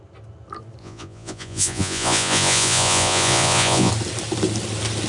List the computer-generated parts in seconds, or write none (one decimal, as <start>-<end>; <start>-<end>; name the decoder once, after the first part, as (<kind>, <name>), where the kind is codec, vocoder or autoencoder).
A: 0.8-3.9 (vocoder, Vocos)